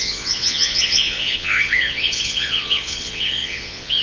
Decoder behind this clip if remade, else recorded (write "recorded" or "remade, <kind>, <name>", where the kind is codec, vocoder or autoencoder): remade, vocoder, Vocos